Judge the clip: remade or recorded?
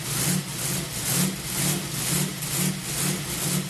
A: recorded